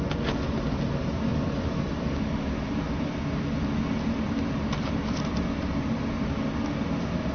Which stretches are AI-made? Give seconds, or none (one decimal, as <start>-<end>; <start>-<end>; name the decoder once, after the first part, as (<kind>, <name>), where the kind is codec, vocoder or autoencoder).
none